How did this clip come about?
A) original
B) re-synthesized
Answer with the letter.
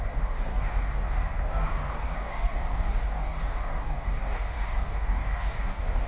B